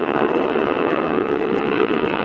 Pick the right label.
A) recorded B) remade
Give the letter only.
B